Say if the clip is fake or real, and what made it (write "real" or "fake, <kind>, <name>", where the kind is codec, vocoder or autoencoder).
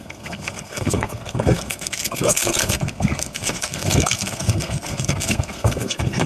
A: fake, codec, SNAC